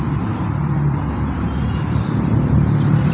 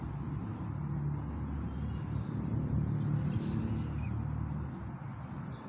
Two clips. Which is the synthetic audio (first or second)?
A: first